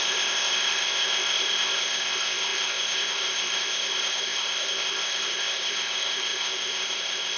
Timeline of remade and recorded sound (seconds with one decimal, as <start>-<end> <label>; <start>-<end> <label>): 0.0-7.4 remade